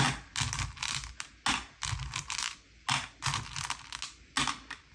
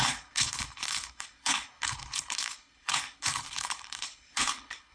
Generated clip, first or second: second